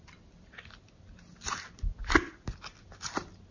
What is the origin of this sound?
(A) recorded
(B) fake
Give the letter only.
A